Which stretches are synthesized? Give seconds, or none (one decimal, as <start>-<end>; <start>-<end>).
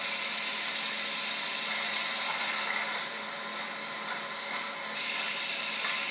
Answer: none